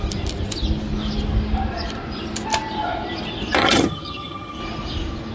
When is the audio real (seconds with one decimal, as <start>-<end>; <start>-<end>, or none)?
0.0-3.6; 4.6-5.3